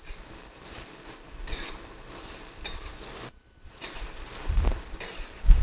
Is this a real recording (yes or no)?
no